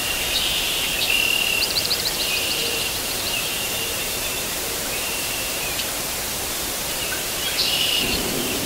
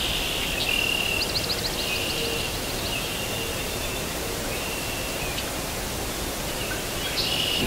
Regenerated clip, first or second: first